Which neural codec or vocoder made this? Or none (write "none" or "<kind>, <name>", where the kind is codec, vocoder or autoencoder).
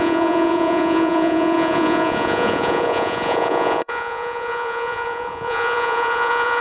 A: vocoder, Vocos